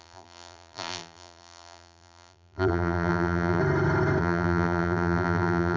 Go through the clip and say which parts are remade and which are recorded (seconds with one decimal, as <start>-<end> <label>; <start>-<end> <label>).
0.0-3.6 remade; 3.6-4.2 recorded; 4.2-5.8 remade